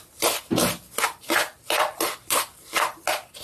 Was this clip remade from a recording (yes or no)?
no